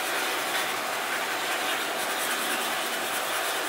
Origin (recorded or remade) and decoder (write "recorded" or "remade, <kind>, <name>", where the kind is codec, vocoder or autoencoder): recorded